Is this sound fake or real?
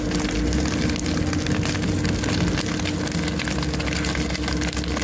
real